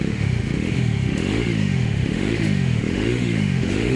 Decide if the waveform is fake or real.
fake